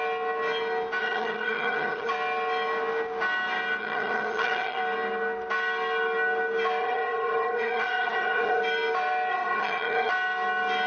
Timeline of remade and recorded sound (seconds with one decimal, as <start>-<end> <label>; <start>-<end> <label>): 0.0-1.0 recorded; 1.0-2.1 remade; 2.1-3.8 recorded; 3.8-4.8 remade; 4.8-6.8 recorded; 6.8-8.6 remade; 8.6-9.3 recorded; 9.3-10.1 remade; 10.1-10.9 recorded